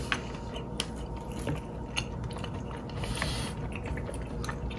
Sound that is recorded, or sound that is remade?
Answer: recorded